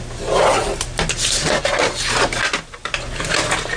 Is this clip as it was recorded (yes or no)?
yes